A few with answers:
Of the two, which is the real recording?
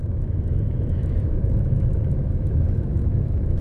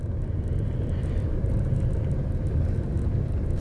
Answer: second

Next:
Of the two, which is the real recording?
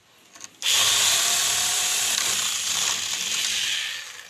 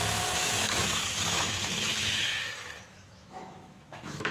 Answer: first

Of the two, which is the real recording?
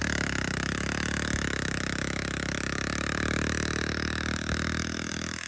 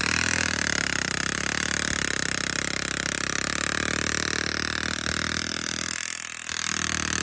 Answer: second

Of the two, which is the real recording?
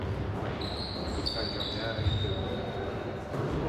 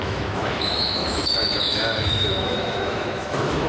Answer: first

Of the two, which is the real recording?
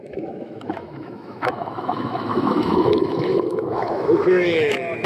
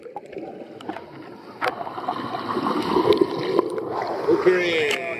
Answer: second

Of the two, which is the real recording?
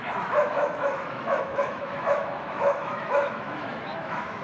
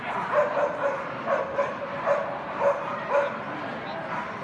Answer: second